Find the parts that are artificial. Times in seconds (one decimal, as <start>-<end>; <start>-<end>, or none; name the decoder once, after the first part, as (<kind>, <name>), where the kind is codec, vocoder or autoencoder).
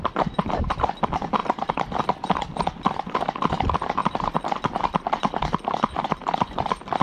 none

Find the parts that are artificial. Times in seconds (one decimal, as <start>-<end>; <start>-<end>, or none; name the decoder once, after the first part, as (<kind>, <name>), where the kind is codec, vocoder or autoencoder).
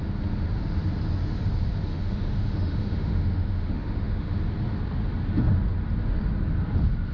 1.9-4.4 (autoencoder, DAC-VAE)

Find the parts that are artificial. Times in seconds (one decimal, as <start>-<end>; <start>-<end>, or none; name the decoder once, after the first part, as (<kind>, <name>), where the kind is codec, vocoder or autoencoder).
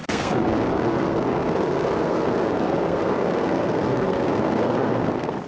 0.0-5.5 (codec, SNAC)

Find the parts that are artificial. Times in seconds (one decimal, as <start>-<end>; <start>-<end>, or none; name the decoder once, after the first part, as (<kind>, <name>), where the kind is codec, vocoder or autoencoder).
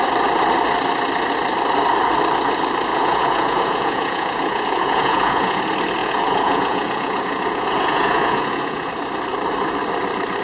2.9-5.6 (vocoder, Vocos); 6.0-8.9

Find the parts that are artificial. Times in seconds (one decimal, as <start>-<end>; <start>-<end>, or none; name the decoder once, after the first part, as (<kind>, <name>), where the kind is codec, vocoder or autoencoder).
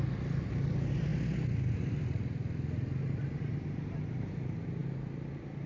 none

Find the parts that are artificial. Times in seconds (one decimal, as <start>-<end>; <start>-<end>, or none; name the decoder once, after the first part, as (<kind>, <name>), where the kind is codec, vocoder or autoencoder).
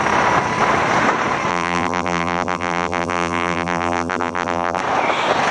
1.5-4.8 (vocoder, BigVGAN v2)